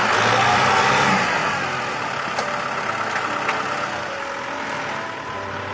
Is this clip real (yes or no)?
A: yes